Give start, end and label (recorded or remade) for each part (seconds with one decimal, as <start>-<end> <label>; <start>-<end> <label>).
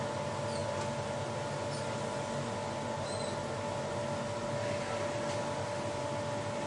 0.0-6.7 recorded